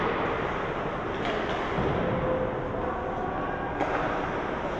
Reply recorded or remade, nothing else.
recorded